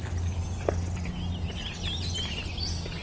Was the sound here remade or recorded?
recorded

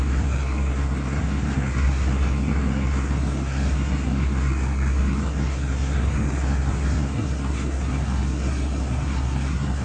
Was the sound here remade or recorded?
remade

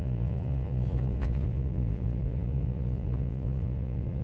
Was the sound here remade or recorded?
remade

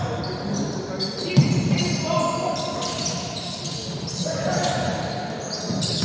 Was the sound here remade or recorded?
recorded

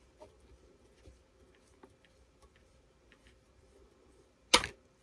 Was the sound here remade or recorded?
recorded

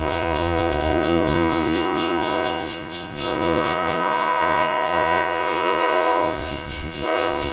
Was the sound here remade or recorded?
remade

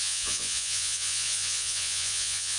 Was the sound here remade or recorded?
remade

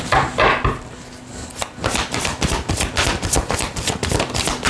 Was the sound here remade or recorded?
recorded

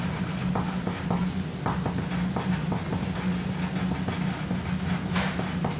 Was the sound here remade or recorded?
recorded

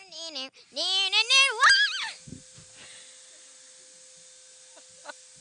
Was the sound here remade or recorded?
recorded